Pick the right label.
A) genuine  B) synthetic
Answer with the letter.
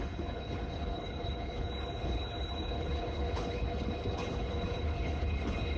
B